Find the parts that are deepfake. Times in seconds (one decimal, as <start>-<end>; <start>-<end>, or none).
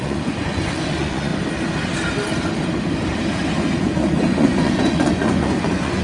0.0-1.3; 3.8-6.0